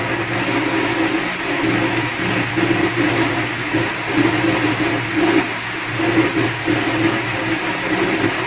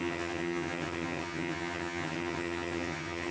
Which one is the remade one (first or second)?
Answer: second